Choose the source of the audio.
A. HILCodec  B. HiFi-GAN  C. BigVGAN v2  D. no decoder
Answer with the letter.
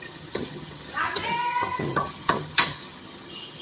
B